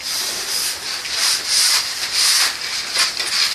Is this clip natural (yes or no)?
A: yes